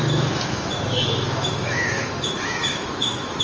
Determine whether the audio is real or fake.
fake